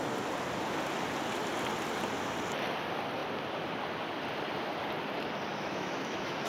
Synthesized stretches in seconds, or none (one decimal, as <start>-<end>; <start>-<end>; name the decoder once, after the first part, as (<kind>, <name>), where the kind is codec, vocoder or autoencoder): 5.5-6.5 (autoencoder, DAC-VAE)